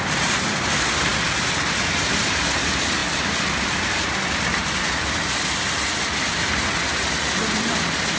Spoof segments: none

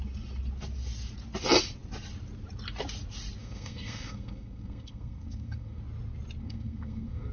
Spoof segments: 3.4-5.8 (codec, SNAC); 6.4-7.3

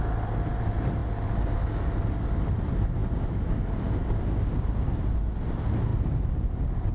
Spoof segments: none

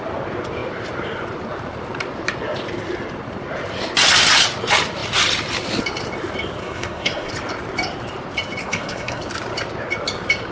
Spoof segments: 6.6-7.3 (codec, SNAC); 8.6-9.2

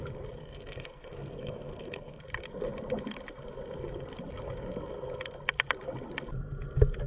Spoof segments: 0.4-2.2 (codec, SNAC)

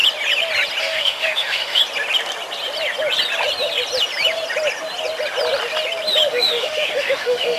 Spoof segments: 0.8-1.8 (autoencoder, DAC-VAE); 6.3-7.6

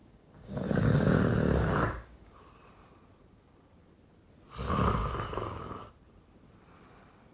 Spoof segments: 0.0-2.5 (codec, DAC); 5.0-5.9